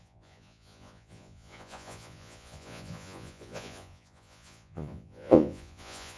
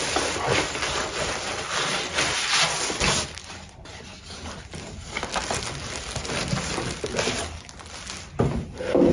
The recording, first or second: second